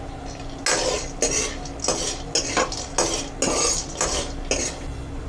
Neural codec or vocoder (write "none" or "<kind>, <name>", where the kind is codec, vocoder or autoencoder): none